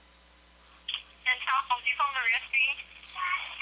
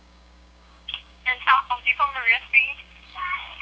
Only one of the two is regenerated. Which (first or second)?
second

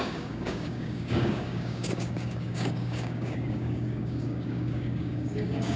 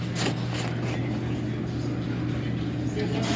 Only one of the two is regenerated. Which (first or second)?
first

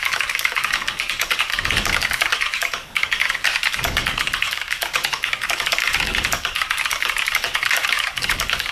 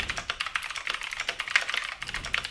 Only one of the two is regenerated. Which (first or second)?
first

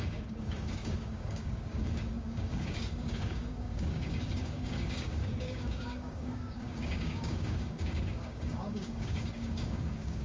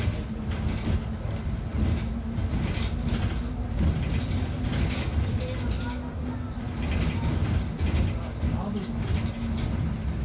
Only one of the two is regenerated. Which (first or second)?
first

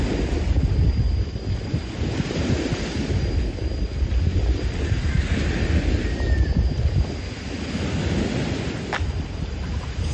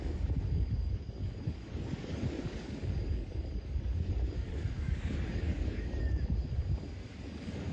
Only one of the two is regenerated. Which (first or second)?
second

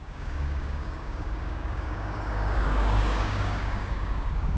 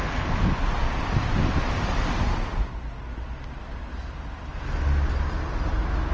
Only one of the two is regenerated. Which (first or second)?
first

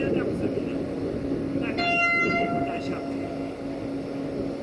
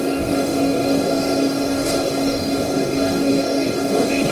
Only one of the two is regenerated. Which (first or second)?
second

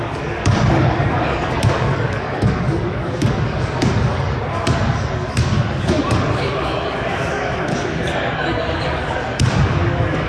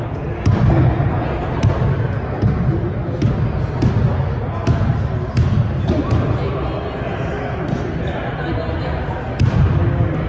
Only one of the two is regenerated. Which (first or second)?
first